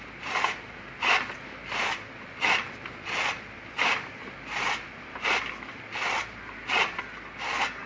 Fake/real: real